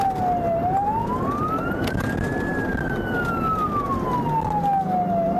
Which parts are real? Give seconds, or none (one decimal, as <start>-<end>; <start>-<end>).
0.0-5.4